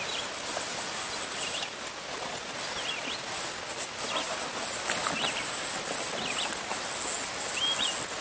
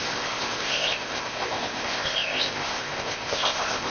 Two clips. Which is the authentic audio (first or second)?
first